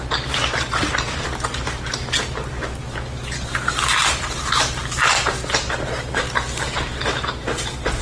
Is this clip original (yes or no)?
no